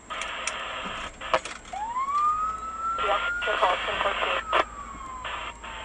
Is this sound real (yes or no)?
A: yes